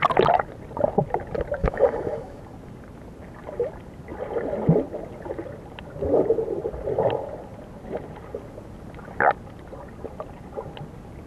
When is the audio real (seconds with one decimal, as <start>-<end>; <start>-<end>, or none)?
0.0-1.6; 2.4-11.3